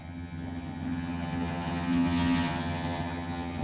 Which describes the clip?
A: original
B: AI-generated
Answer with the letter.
B